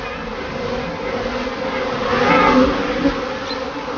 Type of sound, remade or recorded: recorded